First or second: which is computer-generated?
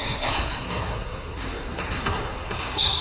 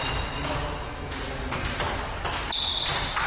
first